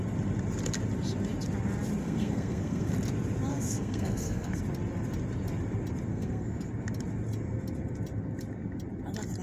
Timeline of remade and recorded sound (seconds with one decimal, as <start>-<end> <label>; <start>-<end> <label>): 0.0-2.0 recorded; 2.0-2.9 remade; 2.9-3.5 recorded; 3.5-4.6 remade; 4.6-6.1 recorded; 6.1-6.7 remade; 6.7-9.4 recorded